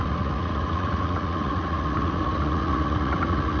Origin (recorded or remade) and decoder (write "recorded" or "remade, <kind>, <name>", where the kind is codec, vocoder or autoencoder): remade, vocoder, Vocos